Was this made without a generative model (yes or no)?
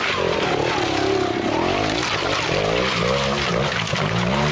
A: yes